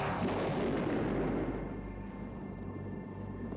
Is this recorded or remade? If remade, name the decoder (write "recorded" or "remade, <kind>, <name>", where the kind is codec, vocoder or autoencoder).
recorded